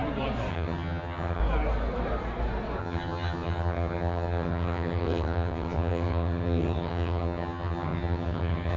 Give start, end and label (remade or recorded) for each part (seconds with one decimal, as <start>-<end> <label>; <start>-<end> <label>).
0.0-0.5 recorded; 0.5-1.4 remade; 1.4-2.8 recorded; 2.8-8.8 remade